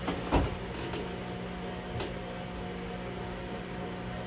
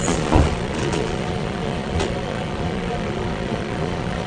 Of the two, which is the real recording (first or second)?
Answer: first